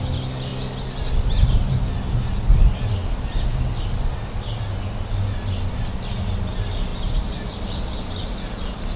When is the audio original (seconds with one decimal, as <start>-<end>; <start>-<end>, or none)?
0.0-9.0